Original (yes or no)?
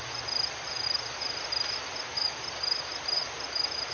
yes